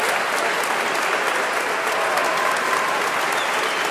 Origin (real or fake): real